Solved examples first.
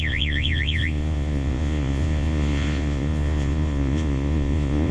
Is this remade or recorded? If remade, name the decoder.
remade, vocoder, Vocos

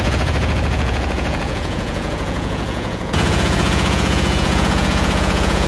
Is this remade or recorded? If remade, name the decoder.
remade, vocoder, Vocos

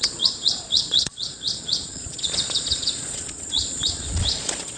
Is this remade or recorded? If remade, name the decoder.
remade, vocoder, Vocos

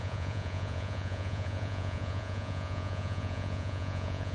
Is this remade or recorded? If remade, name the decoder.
remade, vocoder, Vocos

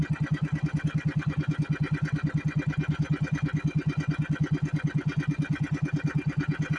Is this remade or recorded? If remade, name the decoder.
recorded